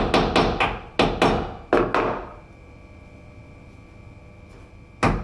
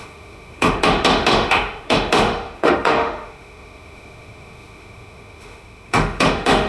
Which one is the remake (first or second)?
second